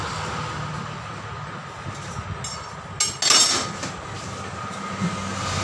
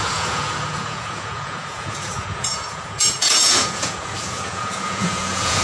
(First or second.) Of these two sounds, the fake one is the second